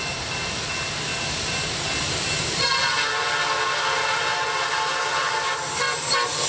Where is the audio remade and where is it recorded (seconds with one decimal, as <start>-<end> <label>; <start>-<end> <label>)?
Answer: 0.0-6.5 recorded